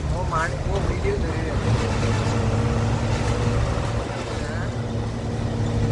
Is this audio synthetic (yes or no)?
no